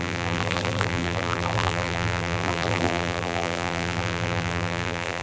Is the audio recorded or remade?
remade